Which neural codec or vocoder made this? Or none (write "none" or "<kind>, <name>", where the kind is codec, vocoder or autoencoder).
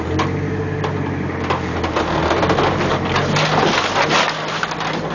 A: none